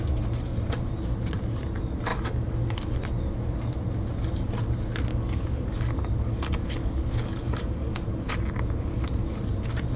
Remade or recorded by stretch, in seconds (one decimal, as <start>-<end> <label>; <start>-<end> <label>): 0.0-2.1 recorded; 2.1-2.9 remade; 2.9-5.1 recorded; 5.1-8.3 remade; 8.3-10.0 recorded